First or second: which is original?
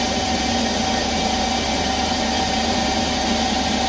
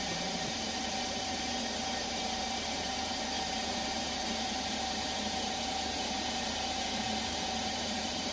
first